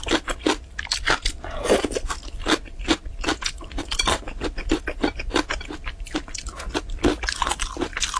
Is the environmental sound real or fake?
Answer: real